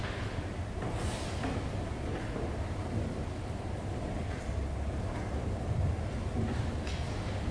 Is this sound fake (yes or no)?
no